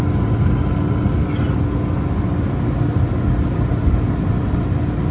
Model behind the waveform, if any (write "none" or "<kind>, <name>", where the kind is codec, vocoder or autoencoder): none